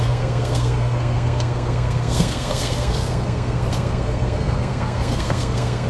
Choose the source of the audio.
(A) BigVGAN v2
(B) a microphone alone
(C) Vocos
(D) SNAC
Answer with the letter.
D